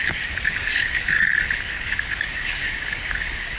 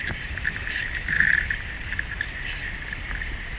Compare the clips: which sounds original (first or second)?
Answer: second